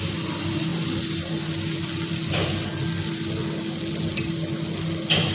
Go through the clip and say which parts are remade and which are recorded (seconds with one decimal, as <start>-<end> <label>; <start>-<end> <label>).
0.0-5.3 recorded